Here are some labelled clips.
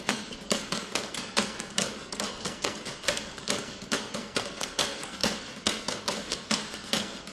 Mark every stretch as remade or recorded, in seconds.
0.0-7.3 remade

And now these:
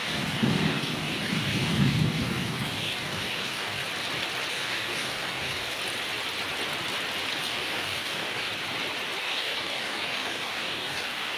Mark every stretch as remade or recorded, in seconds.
0.0-3.8 remade; 3.8-4.5 recorded; 4.5-5.8 remade; 5.8-7.4 recorded; 7.4-8.5 remade; 8.5-9.2 recorded; 9.2-11.4 remade

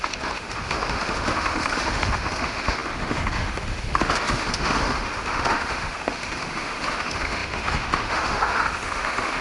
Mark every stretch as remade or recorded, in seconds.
0.0-9.4 remade

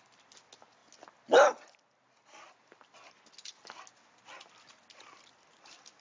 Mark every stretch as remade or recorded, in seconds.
0.0-6.0 recorded

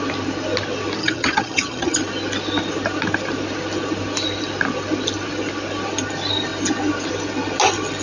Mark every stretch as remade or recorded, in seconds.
0.0-1.0 recorded; 1.0-2.0 remade; 2.0-8.0 recorded